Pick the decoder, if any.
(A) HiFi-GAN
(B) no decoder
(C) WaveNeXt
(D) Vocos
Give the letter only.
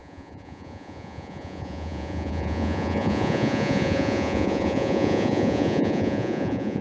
D